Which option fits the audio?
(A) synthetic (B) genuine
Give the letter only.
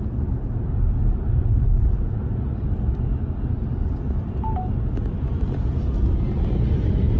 A